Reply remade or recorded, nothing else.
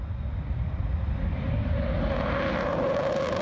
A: recorded